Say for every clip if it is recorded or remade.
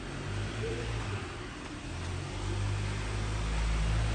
recorded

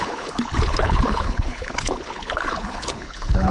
remade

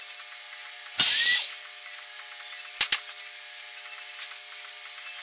recorded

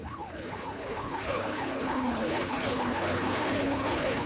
remade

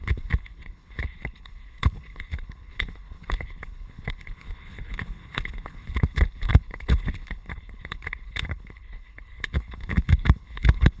remade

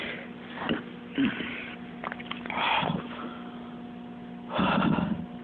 recorded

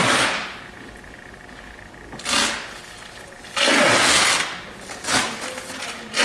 recorded